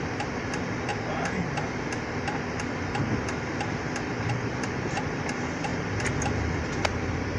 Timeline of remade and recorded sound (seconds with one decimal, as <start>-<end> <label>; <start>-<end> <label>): 0.0-0.9 remade; 0.9-4.3 recorded; 4.3-5.7 remade; 5.7-6.7 recorded; 6.7-7.4 remade